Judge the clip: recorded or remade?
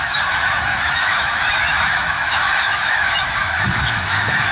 remade